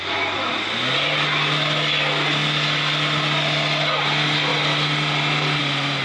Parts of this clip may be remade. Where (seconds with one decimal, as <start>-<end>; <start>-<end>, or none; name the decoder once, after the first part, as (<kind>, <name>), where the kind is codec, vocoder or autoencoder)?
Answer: none